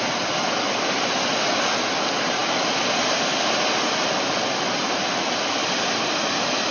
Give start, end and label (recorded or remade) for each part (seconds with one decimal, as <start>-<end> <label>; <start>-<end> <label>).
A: 0.0-6.7 recorded